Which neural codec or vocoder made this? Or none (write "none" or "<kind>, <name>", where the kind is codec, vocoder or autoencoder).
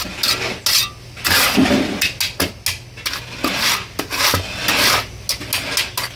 none